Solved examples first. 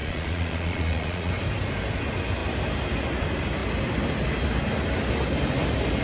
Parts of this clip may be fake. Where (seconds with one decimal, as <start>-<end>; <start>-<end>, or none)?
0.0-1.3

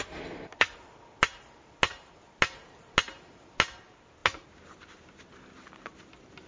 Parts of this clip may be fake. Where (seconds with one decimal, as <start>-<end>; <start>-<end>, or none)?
none

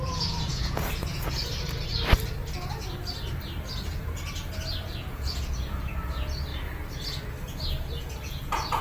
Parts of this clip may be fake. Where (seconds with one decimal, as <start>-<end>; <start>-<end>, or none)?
0.0-1.4; 5.1-6.5; 8.0-8.8

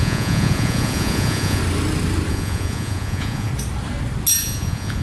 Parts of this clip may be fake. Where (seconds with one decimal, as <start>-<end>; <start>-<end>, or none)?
0.0-1.6; 2.3-3.5; 4.4-5.0